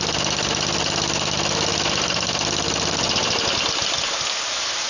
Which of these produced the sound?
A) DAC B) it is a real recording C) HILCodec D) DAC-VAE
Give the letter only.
B